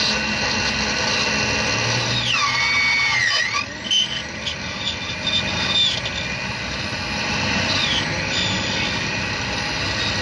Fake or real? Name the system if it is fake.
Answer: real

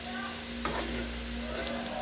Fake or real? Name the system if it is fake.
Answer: real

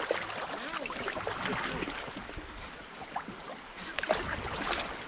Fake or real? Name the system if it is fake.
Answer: real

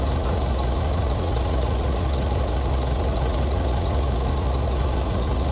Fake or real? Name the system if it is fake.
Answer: fake, vocoder, Vocos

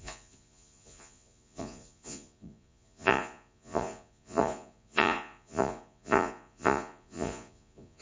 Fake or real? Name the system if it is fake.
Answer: fake, vocoder, Vocos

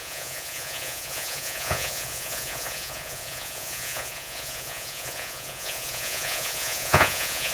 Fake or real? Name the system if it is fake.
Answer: fake, vocoder, Vocos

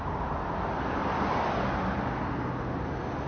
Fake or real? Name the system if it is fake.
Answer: real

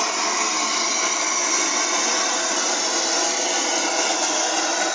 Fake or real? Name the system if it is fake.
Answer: real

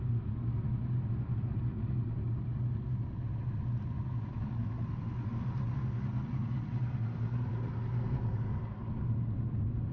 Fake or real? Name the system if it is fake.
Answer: real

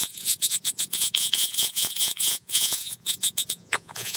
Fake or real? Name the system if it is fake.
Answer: fake, vocoder, Vocos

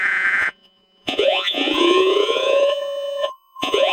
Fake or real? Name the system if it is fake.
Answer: fake, vocoder, Vocos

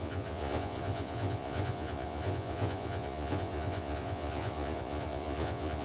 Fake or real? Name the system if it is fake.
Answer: fake, vocoder, Vocos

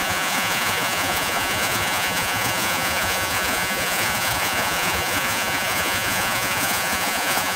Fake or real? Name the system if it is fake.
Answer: fake, vocoder, Vocos